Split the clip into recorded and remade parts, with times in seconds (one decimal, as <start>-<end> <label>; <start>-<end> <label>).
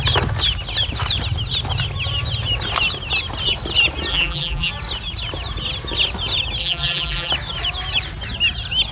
0.0-4.1 recorded; 4.1-4.7 remade; 4.7-6.6 recorded; 6.6-7.3 remade; 7.3-8.9 recorded